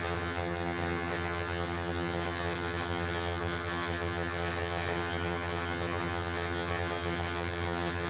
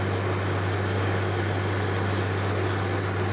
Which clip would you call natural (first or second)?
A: second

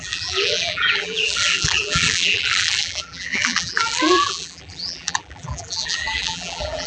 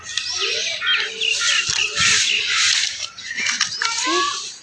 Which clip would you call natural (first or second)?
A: second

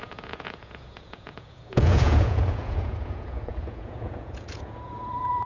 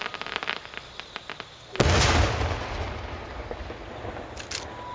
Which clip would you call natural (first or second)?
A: second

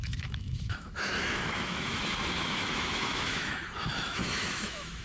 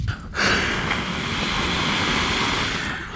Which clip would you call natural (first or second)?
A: second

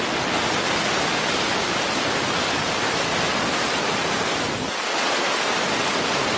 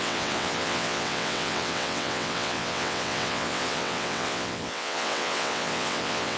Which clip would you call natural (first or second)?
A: first